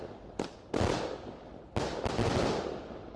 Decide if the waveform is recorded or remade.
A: recorded